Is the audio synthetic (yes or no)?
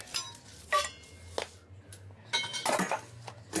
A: no